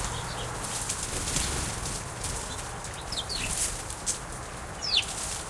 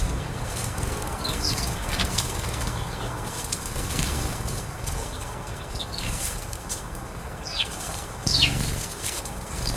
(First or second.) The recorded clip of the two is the first